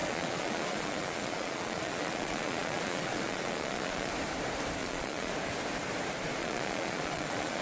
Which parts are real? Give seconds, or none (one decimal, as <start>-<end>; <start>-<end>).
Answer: 4.1-4.8; 5.3-6.4